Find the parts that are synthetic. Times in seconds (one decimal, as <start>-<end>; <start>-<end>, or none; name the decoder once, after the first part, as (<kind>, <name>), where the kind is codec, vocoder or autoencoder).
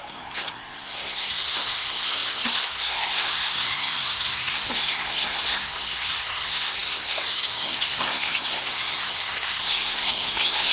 0.0-10.7 (codec, SNAC)